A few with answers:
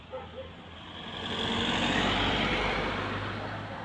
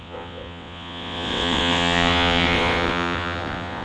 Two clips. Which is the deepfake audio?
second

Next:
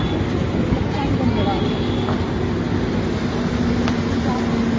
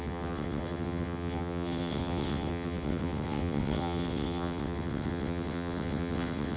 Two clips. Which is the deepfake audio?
second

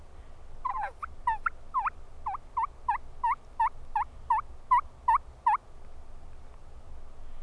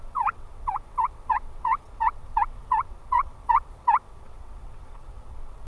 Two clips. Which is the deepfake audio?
second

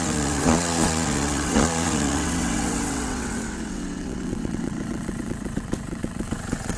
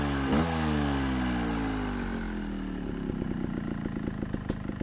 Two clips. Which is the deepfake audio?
first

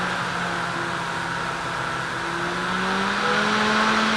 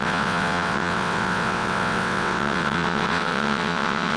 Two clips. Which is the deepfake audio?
second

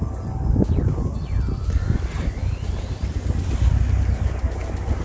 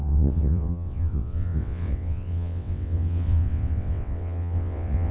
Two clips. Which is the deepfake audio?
second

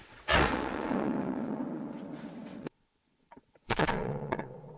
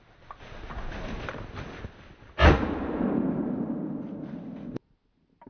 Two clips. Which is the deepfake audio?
first